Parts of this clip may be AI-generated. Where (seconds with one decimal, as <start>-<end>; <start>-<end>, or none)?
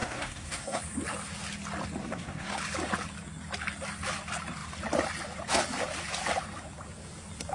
0.0-0.8; 2.0-2.6